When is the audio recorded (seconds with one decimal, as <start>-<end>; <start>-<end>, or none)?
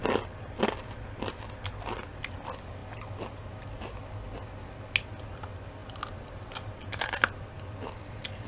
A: 0.0-8.5